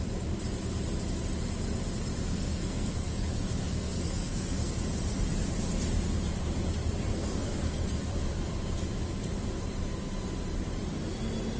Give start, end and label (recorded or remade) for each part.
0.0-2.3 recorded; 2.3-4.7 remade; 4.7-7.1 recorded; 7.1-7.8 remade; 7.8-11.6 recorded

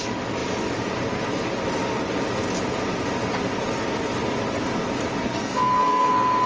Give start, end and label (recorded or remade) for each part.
0.0-5.2 recorded; 5.2-6.5 remade

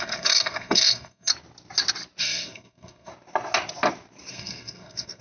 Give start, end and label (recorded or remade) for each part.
0.0-1.3 remade; 1.3-2.2 recorded; 2.2-3.1 remade; 3.1-4.3 recorded; 4.3-5.2 remade

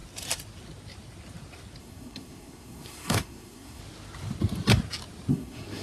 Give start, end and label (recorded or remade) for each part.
0.0-1.8 recorded; 1.8-3.8 remade; 3.8-5.3 recorded; 5.3-5.8 remade

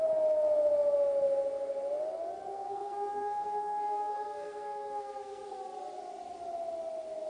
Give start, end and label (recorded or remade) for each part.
0.0-2.5 recorded; 2.5-5.6 remade; 5.6-7.3 recorded

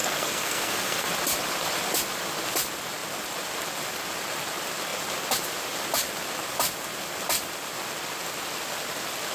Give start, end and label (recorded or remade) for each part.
0.0-1.1 remade; 1.1-9.3 recorded

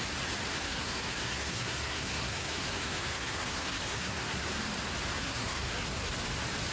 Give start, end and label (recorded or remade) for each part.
0.0-0.5 recorded; 0.5-4.5 remade; 4.5-5.2 recorded; 5.2-6.1 remade; 6.1-6.7 recorded

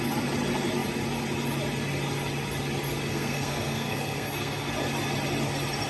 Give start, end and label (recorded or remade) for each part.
0.0-3.1 recorded; 3.1-4.7 remade; 4.7-5.9 recorded